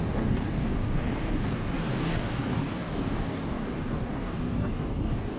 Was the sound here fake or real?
fake